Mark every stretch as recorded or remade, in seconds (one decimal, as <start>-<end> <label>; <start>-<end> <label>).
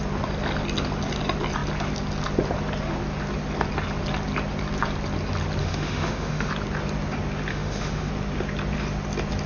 0.0-5.6 recorded; 5.6-6.5 remade; 6.5-7.5 recorded; 7.5-8.1 remade; 8.1-9.5 recorded